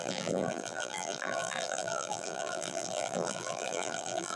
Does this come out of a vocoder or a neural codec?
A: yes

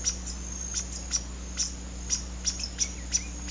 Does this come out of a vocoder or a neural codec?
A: no